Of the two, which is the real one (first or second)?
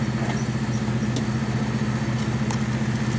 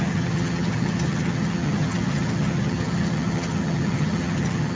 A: first